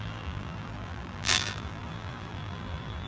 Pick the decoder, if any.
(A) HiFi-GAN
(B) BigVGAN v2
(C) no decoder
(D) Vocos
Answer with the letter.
B